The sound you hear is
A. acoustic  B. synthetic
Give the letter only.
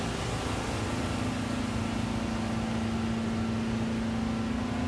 A